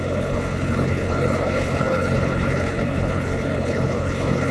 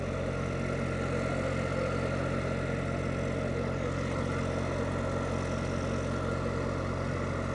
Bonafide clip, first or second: second